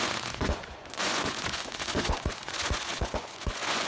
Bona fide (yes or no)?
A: no